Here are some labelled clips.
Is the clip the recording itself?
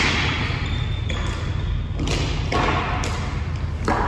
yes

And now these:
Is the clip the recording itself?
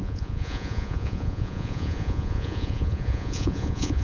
no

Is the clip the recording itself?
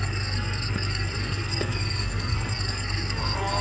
no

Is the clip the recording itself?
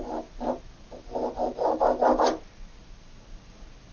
yes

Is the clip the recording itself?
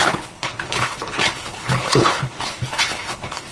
no